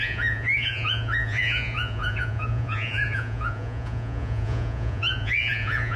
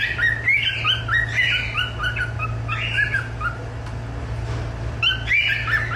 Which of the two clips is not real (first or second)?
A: first